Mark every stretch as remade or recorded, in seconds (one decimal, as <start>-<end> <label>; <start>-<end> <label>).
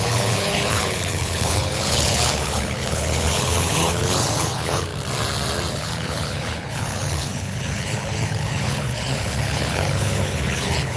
0.0-4.9 remade; 4.9-5.7 recorded; 5.7-11.0 remade